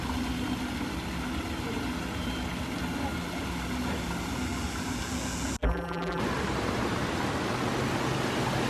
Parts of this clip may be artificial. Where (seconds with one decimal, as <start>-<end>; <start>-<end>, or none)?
5.6-6.2